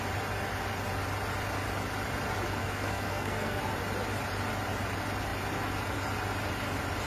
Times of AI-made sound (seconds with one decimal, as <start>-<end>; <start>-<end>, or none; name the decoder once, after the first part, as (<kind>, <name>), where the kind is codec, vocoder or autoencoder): 2.6-3.6 (codec, SNAC)